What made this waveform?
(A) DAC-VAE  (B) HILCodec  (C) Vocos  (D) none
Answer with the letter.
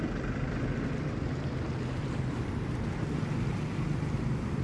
D